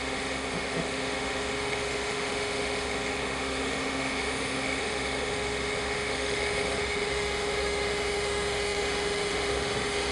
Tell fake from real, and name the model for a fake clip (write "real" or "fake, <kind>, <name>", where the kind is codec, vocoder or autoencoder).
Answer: fake, autoencoder, DAC-VAE